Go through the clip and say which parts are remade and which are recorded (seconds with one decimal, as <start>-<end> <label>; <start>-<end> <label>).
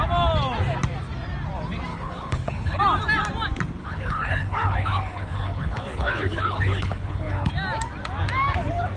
0.0-1.9 recorded; 1.9-2.8 remade; 2.8-3.8 recorded; 3.8-7.5 remade; 7.5-9.0 recorded